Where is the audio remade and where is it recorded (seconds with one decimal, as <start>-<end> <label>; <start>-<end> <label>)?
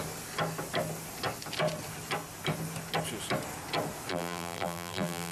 0.0-4.1 recorded; 4.1-5.3 remade